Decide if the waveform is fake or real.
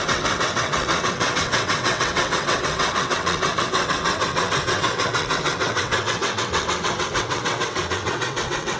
fake